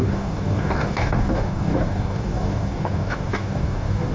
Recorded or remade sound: remade